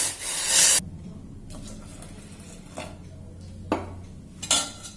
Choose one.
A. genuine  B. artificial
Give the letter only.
A